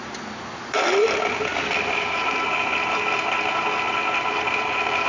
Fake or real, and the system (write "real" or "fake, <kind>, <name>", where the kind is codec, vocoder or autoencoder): fake, vocoder, BigVGAN v2